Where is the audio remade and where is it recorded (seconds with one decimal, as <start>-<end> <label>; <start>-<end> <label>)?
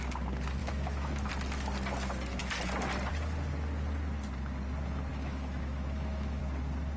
0.0-0.6 recorded; 0.6-1.3 remade; 1.3-5.1 recorded; 5.1-6.4 remade; 6.4-7.0 recorded